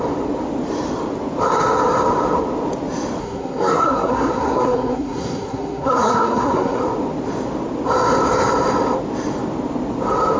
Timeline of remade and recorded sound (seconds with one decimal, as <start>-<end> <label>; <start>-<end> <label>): 0.0-3.2 recorded; 3.2-6.8 remade; 6.8-10.4 recorded